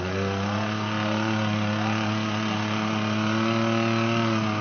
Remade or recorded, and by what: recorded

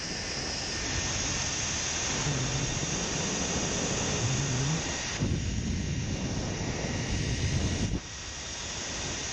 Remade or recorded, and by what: recorded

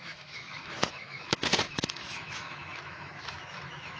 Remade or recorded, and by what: remade, autoencoder, DAC-VAE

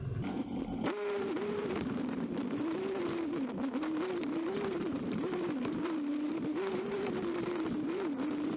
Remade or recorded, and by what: remade, vocoder, BigVGAN v2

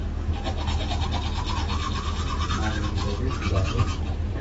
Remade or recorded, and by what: recorded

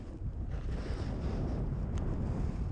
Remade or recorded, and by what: recorded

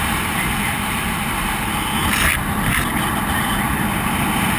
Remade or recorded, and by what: recorded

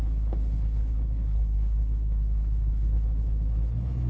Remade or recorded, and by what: remade, codec, HILCodec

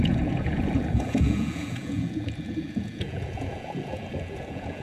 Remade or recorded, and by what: remade, vocoder, Vocos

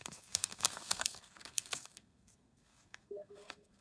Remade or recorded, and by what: remade, codec, SNAC